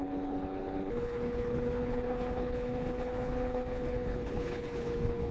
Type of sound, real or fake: fake